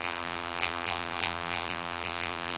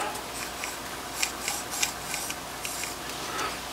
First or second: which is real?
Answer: second